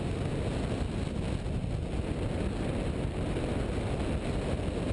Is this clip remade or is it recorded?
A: recorded